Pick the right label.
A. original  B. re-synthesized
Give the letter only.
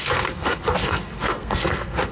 B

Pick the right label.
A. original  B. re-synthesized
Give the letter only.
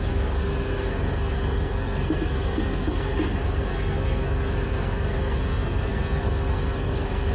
B